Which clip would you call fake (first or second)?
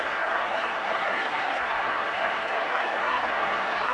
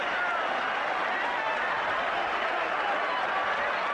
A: first